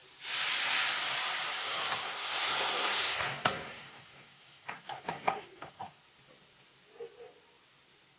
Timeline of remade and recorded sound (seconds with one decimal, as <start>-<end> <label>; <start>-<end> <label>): 0.0-1.5 recorded; 1.5-6.0 remade; 6.0-8.2 recorded